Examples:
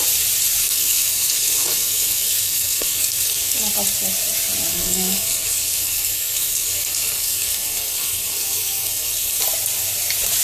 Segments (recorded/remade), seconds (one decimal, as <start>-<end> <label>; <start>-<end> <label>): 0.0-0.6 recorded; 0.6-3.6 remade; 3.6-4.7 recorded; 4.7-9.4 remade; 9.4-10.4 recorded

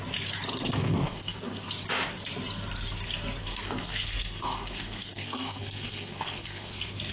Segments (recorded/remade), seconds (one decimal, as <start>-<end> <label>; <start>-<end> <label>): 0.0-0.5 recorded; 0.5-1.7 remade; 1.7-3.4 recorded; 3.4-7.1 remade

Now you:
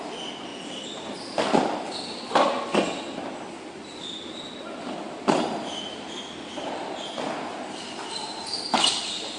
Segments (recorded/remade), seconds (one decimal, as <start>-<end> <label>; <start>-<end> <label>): 0.0-9.4 recorded